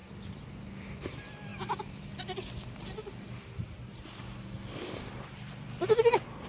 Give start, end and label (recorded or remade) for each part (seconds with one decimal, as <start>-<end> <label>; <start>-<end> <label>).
0.0-1.5 recorded; 1.5-5.1 remade; 5.1-6.5 recorded